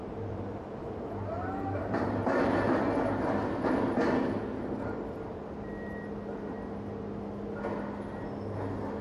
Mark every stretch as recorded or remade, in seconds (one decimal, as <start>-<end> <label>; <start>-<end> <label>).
0.0-2.8 remade; 2.8-9.0 recorded